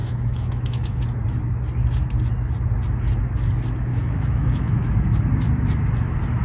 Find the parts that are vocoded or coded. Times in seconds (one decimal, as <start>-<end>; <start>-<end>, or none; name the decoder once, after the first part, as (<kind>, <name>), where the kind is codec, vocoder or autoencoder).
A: 0.0-1.0 (autoencoder, DAC-VAE); 3.9-4.9